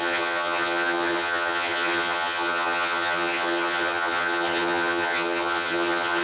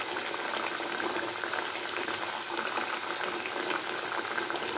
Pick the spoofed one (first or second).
first